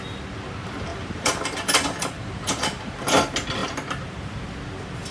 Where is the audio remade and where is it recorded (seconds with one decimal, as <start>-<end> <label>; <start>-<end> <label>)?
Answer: 0.0-0.9 recorded; 0.9-3.2 remade; 3.2-5.1 recorded